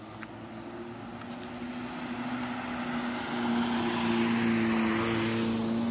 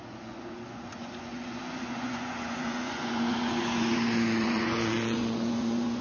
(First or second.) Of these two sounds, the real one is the first